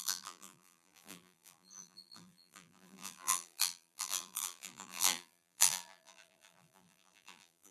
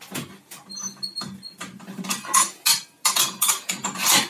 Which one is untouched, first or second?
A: second